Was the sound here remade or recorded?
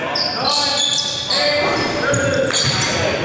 recorded